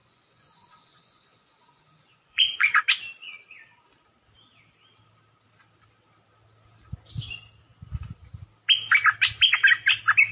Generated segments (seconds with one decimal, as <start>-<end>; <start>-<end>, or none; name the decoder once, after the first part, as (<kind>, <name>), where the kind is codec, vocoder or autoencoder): 0.0-2.8 (vocoder, Vocos)